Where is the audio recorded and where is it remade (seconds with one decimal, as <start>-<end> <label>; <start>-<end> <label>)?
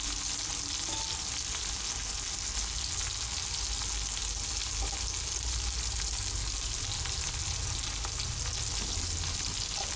0.0-10.0 recorded